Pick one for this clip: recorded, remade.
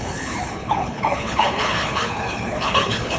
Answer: remade